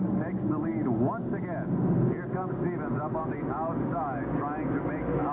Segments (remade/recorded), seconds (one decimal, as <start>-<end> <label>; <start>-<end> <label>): 0.0-5.3 recorded